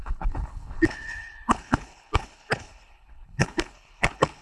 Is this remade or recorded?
remade